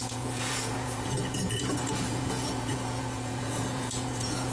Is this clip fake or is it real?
fake